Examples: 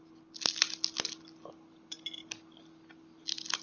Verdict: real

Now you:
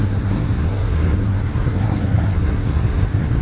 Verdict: fake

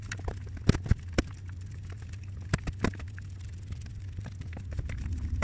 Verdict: fake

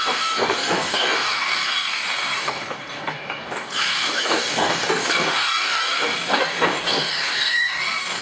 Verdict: fake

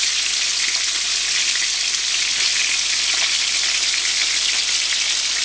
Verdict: real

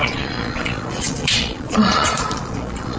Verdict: fake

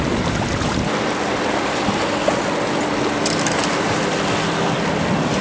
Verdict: real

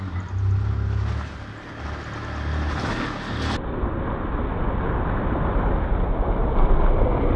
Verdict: real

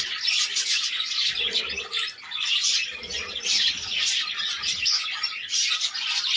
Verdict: real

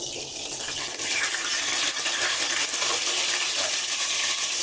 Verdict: real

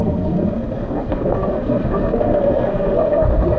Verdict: fake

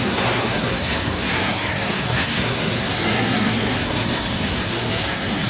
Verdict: fake